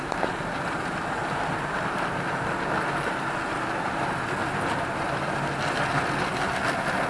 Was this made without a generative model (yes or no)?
yes